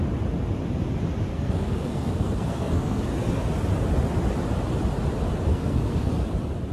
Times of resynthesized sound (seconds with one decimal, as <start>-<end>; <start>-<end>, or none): 1.3-3.0; 5.5-6.1